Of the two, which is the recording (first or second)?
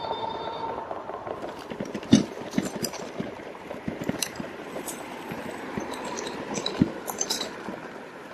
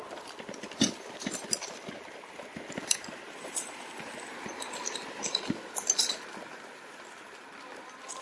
second